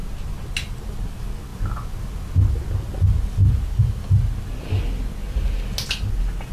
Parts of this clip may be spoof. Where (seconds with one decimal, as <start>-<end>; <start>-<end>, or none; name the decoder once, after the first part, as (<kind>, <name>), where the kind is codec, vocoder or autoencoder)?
none

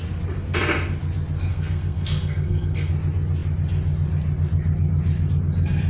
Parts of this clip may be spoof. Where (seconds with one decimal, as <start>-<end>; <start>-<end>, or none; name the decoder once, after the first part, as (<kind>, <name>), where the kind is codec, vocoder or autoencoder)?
1.5-2.9 (codec, SNAC)

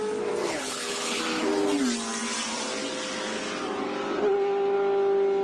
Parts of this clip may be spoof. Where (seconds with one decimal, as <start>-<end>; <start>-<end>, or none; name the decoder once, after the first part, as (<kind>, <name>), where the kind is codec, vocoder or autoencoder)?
0.4-1.2 (codec, HILCodec)

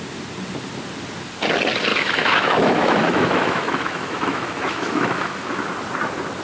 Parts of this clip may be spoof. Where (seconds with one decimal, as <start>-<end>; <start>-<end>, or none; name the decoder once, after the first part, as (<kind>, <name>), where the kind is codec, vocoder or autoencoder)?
1.9-5.7 (autoencoder, DAC-VAE)

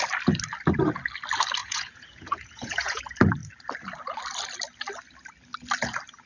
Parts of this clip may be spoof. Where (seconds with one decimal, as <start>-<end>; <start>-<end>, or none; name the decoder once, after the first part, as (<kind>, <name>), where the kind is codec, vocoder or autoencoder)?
1.6-3.0 (vocoder, Vocos)

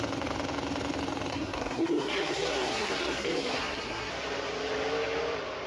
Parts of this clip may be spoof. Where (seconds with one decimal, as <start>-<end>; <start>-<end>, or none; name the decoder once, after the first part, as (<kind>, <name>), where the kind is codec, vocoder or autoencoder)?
1.3-4.1 (codec, SNAC)

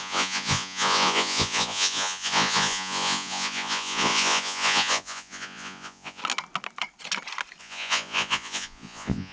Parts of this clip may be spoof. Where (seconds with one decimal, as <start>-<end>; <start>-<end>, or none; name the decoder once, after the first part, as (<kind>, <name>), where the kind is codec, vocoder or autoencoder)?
0.0-6.2 (vocoder, Vocos); 7.6-9.3

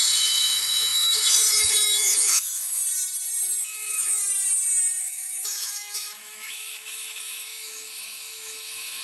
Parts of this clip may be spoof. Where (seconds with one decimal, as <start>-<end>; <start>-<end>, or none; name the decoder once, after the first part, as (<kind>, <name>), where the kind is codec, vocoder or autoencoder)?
0.0-2.8 (autoencoder, DAC-VAE); 3.6-4.2; 5.0-9.0